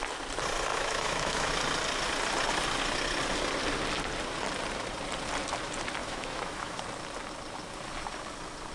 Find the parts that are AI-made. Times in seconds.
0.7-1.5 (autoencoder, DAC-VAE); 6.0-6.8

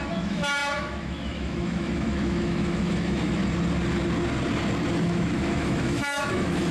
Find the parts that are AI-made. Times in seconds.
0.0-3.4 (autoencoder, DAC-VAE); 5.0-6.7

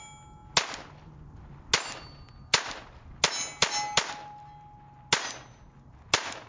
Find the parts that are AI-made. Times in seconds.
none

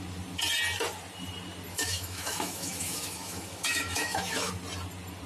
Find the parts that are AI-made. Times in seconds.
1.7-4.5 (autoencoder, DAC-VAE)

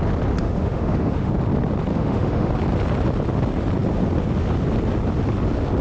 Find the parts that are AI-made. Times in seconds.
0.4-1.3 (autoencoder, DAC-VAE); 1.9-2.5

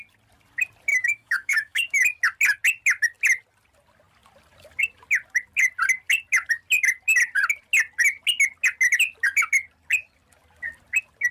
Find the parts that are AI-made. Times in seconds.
0.9-2.0 (autoencoder, DAC-VAE)

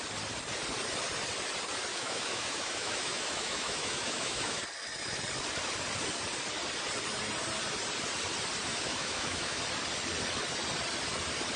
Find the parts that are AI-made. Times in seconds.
1.9-4.6 (autoencoder, DAC-VAE); 8.7-9.6

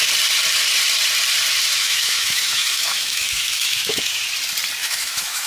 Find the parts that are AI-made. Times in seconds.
1.7-4.2 (autoencoder, DAC-VAE); 4.8-5.5